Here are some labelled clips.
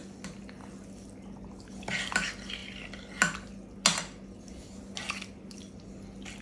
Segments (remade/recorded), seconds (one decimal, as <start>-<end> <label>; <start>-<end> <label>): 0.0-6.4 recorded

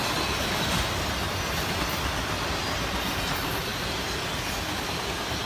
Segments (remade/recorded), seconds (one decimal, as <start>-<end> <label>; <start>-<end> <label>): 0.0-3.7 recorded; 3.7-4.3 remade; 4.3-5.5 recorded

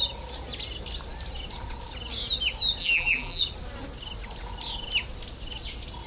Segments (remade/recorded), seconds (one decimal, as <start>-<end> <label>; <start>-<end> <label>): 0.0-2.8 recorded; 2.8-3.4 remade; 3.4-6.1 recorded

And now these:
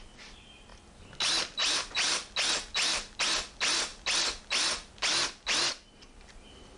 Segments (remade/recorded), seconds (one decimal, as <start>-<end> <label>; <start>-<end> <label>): 0.0-6.8 recorded

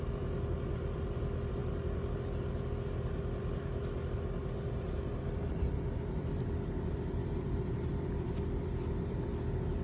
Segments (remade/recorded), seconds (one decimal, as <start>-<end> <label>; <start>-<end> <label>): 0.0-4.4 recorded; 4.4-9.3 remade; 9.3-9.8 recorded